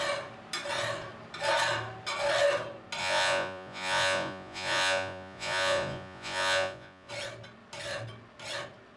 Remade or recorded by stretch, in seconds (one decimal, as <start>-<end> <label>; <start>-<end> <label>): 0.0-3.0 recorded; 3.0-7.1 remade; 7.1-9.0 recorded